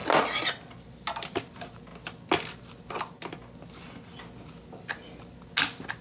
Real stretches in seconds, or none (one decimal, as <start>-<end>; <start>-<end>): 0.0-6.0